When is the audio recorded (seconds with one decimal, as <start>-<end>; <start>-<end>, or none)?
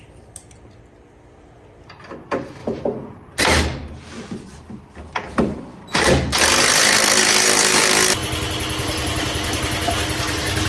0.0-10.7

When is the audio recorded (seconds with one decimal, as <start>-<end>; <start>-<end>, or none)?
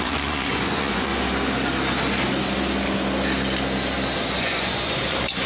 1.1-4.4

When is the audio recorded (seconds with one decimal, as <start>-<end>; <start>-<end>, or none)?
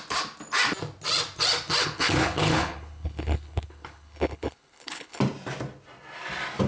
0.0-1.8; 5.2-6.7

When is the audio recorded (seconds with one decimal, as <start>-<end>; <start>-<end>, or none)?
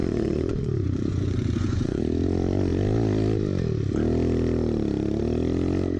2.0-6.0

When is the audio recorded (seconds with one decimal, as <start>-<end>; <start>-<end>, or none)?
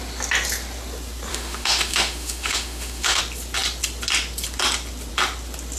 0.0-1.3; 3.2-5.8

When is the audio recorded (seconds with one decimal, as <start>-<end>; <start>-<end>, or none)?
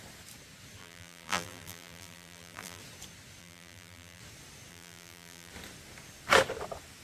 0.0-0.8; 2.8-3.4; 4.2-4.7; 5.5-7.0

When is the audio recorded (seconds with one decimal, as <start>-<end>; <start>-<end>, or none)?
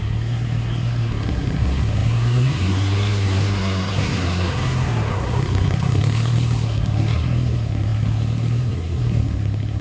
none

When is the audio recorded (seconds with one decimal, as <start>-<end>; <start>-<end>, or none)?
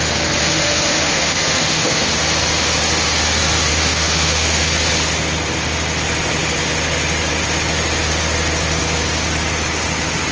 0.0-0.4; 2.1-3.7; 4.7-10.3